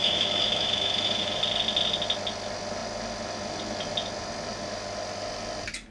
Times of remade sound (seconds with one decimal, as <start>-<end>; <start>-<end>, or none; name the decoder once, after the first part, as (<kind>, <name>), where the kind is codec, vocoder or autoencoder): 0.0-1.4 (autoencoder, DAC-VAE)